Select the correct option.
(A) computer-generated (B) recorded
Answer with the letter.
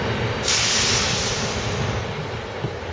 B